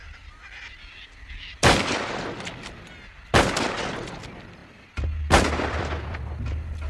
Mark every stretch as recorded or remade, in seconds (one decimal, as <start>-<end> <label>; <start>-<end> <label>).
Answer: 0.0-6.9 recorded